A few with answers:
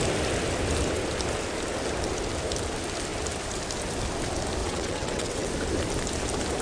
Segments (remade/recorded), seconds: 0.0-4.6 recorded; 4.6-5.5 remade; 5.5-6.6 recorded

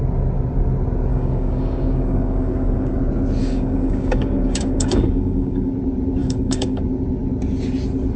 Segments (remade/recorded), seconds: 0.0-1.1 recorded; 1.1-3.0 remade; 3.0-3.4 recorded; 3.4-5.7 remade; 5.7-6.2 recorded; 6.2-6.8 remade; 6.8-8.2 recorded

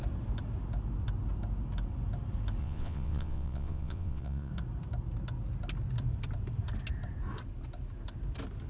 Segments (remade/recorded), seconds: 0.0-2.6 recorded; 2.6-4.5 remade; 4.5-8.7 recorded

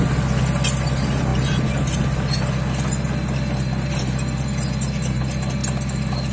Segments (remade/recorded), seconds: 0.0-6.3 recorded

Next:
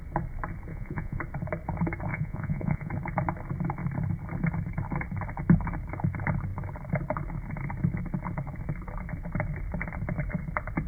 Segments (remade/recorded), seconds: 0.0-0.7 recorded; 0.7-1.2 remade; 1.2-2.1 recorded; 2.1-2.9 remade; 2.9-10.9 recorded

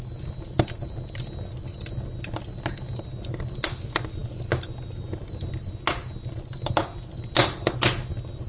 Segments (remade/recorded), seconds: 0.0-8.5 recorded

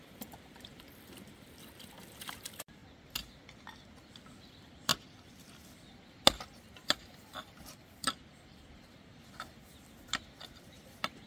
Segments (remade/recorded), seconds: 0.0-2.8 remade; 2.8-4.5 recorded; 4.5-4.9 remade; 4.9-6.5 recorded; 6.5-11.3 remade

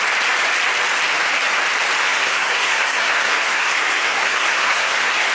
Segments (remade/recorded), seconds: 0.0-2.0 recorded; 2.0-5.3 remade